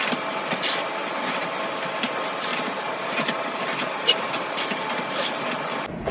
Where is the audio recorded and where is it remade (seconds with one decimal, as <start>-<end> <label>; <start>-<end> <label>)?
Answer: 0.0-2.5 recorded; 2.5-4.3 remade; 4.3-6.1 recorded